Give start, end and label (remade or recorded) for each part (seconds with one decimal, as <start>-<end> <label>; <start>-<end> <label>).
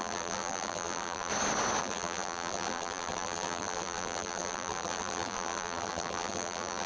0.0-1.3 remade; 1.3-1.8 recorded; 1.8-6.9 remade